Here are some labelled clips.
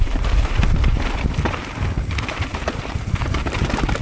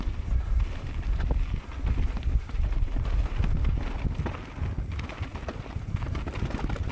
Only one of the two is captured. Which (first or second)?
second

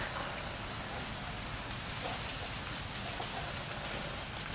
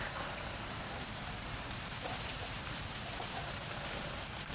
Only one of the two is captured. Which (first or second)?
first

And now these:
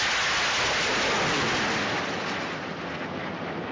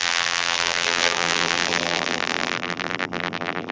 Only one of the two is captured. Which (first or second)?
first